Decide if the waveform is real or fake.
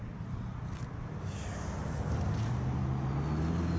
real